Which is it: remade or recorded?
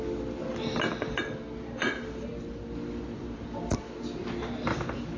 recorded